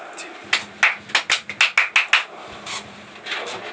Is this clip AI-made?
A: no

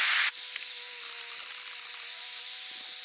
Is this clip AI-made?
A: no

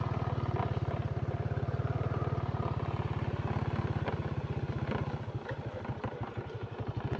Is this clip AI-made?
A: no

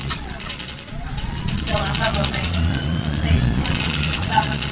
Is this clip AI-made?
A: yes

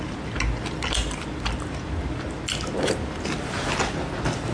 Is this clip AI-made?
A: no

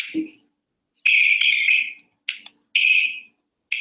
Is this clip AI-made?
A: no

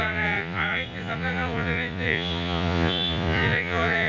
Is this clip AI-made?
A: yes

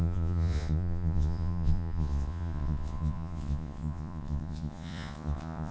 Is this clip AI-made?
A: yes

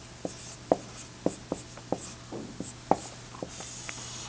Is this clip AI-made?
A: no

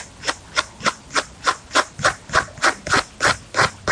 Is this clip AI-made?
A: no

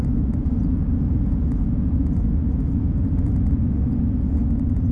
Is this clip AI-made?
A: yes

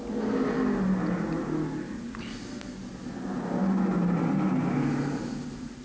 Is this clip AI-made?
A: no